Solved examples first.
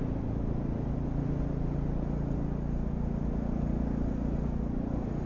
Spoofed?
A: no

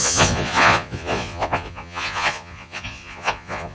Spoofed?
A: yes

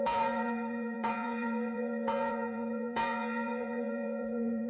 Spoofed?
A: yes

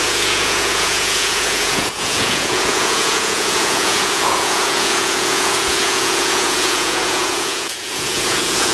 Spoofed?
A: yes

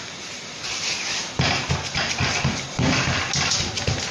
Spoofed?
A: no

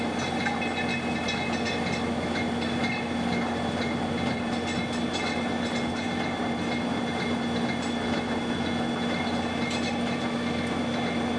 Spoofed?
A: no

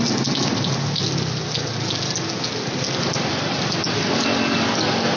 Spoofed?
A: no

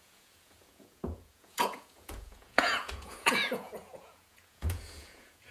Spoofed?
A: yes